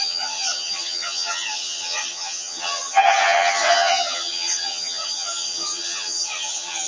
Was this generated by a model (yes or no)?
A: yes